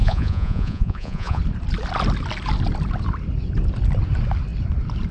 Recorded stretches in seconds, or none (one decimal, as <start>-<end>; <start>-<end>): 1.4-5.1